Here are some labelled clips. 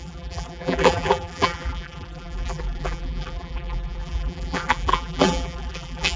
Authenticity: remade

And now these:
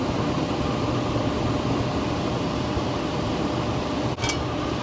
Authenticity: recorded